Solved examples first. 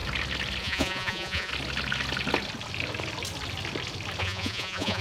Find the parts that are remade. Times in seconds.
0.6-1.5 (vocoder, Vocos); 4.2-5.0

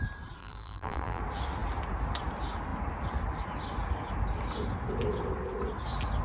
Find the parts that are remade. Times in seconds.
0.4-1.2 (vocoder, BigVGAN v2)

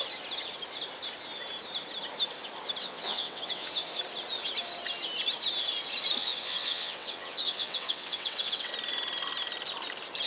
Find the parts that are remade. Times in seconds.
2.8-3.7 (vocoder, WaveNeXt); 6.2-8.7

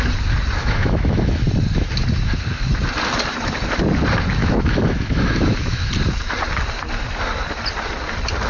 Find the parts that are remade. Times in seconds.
0.6-1.4 (autoencoder, DAC-VAE); 4.4-5.9

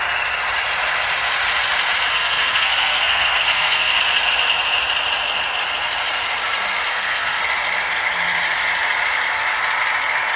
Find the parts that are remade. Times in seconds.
2.1-4.0 (codec, SNAC); 6.9-7.4